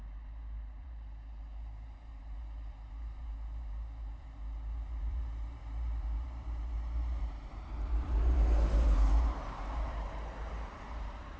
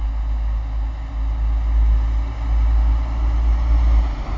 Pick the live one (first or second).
second